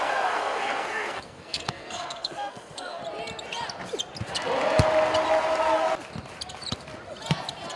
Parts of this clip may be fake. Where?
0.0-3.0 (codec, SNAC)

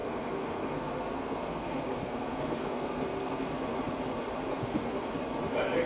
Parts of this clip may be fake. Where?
0.0-3.5 (codec, SNAC); 4.5-5.1

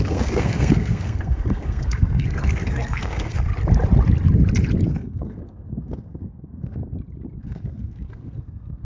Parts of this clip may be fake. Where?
0.0-3.5 (codec, SNAC); 4.9-6.8; 7.4-8.8

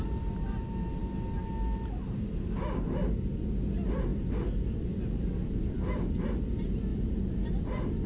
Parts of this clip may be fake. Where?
none